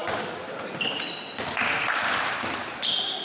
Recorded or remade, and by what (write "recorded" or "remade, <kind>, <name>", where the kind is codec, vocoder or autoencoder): recorded